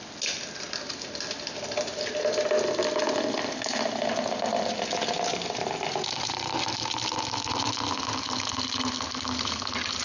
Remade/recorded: recorded